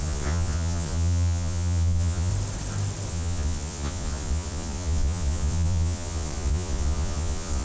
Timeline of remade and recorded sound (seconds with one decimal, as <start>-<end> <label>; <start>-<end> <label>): 0.0-2.3 remade; 2.3-3.1 recorded; 3.1-7.6 remade

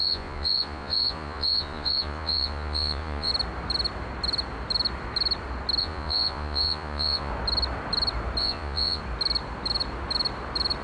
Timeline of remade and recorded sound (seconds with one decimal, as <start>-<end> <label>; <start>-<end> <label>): 0.0-3.3 remade; 3.3-5.8 recorded; 5.8-7.3 remade; 7.3-8.4 recorded; 8.4-9.0 remade; 9.0-10.8 recorded

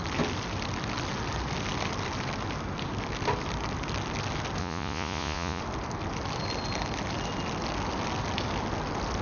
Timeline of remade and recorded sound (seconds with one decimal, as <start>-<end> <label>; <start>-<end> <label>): 0.0-4.6 recorded; 4.6-5.6 remade; 5.6-9.2 recorded

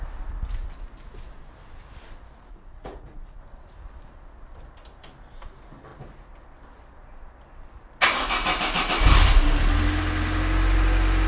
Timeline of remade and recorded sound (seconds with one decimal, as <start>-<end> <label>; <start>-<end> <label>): 0.0-2.5 recorded; 2.5-3.4 remade; 3.4-11.3 recorded

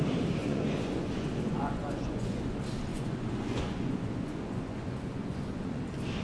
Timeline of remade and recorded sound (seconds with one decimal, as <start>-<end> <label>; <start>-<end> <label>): 0.0-0.4 recorded; 0.4-2.5 remade; 2.5-2.9 recorded; 2.9-5.8 remade; 5.8-6.2 recorded

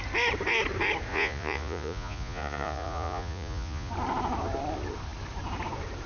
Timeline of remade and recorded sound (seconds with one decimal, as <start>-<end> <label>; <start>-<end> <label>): 0.0-1.1 recorded; 1.1-3.9 remade; 3.9-6.1 recorded

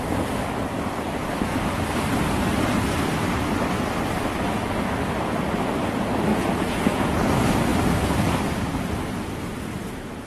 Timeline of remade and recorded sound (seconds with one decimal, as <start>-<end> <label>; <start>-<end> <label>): 0.0-6.3 recorded; 6.3-7.3 remade; 7.3-10.3 recorded